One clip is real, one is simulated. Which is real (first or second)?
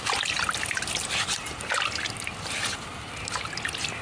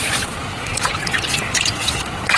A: first